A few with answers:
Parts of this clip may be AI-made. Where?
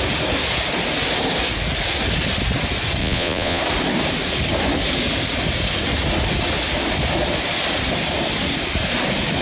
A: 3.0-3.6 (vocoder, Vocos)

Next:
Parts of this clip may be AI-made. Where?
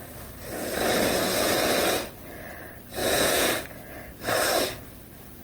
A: 3.0-3.5 (vocoder, Vocos)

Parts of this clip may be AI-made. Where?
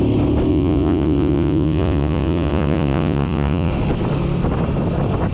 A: 0.5-3.7 (vocoder, Vocos)